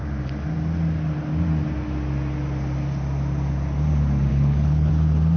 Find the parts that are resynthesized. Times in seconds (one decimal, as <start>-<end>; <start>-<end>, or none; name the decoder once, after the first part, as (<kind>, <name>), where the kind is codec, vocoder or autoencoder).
4.3-4.9 (codec, HILCodec)